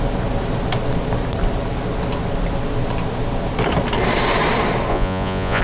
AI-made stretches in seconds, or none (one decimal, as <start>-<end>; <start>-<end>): 4.9-5.6